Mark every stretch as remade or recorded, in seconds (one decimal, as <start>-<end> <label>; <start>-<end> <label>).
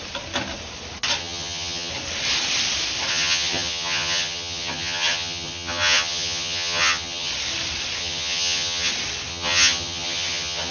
0.0-1.2 recorded; 1.2-1.9 remade; 1.9-3.1 recorded; 3.1-7.3 remade; 7.3-8.0 recorded; 8.0-8.9 remade; 8.9-9.3 recorded; 9.3-10.7 remade